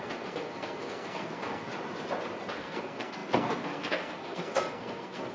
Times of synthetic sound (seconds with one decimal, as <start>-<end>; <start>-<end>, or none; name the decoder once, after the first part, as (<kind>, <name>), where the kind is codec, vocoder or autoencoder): 0.0-1.7 (codec, SNAC); 2.6-5.3